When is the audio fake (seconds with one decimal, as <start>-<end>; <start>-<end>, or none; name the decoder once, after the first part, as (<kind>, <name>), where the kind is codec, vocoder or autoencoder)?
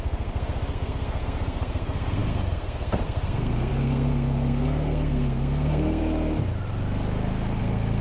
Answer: 0.0-6.0 (codec, SNAC); 7.6-8.0